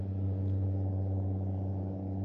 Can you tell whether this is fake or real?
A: fake